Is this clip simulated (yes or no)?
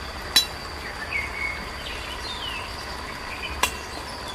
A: no